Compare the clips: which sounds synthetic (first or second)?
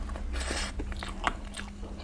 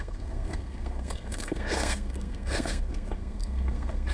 second